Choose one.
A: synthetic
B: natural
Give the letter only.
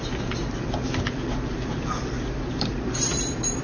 A